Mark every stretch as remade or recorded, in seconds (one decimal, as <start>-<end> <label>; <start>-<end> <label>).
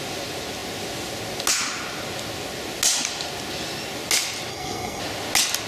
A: 0.0-4.5 recorded; 4.5-5.0 remade; 5.0-5.7 recorded